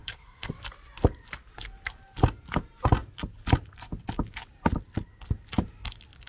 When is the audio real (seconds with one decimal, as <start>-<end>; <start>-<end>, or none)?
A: 0.5-6.3